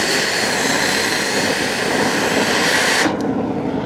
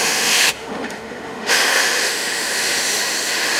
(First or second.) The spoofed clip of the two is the second